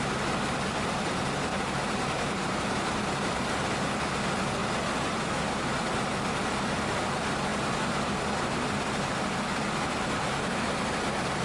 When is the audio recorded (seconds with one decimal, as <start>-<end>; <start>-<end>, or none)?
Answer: 0.0-1.5; 3.2-11.4